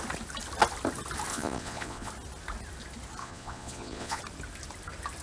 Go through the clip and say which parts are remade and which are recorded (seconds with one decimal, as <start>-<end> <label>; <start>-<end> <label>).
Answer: 0.0-1.3 recorded; 1.3-2.1 remade; 2.1-3.2 recorded; 3.2-4.2 remade; 4.2-5.2 recorded

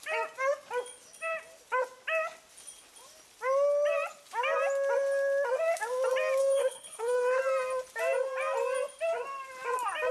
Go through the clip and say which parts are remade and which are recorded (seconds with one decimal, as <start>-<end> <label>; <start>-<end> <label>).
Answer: 0.0-6.4 recorded; 6.4-7.4 remade; 7.4-10.1 recorded

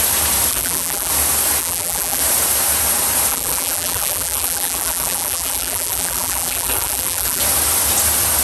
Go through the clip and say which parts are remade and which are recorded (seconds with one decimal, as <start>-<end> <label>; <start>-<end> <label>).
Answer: 0.0-0.5 recorded; 0.5-1.1 remade; 1.1-1.6 recorded; 1.6-2.2 remade; 2.2-3.3 recorded; 3.3-7.4 remade; 7.4-8.4 recorded

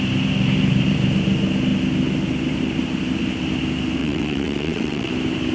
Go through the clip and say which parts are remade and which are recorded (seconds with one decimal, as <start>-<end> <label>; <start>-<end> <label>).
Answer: 0.0-4.0 recorded; 4.0-5.1 remade; 5.1-5.5 recorded

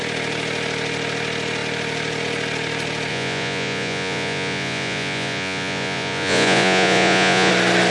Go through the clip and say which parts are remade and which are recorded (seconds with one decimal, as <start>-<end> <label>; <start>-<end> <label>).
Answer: 0.0-3.1 recorded; 3.1-7.5 remade; 7.5-7.9 recorded

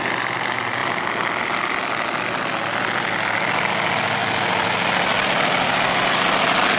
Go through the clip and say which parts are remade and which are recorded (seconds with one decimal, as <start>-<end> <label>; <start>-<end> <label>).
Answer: 0.0-6.8 recorded

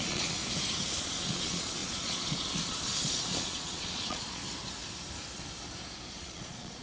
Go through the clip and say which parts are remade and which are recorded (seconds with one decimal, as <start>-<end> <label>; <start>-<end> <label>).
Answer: 0.0-0.4 remade; 0.4-1.0 recorded; 1.0-4.4 remade; 4.4-6.1 recorded; 6.1-6.8 remade